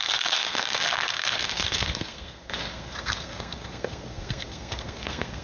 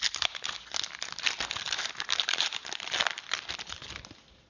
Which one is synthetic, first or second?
first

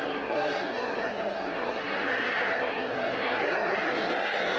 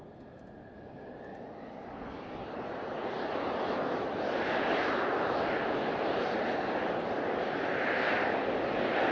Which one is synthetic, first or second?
first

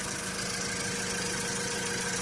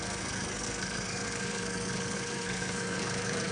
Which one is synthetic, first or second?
second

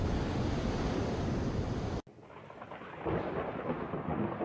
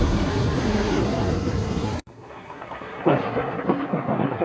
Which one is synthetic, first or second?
second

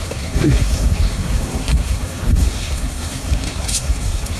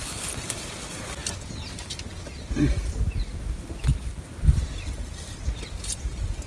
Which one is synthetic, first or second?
first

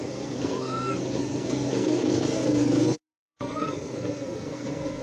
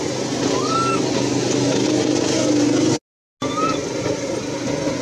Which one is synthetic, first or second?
first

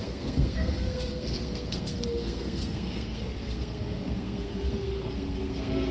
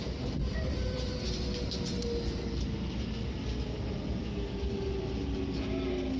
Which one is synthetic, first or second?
first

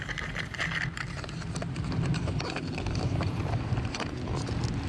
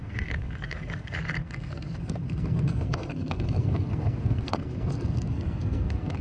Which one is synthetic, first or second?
second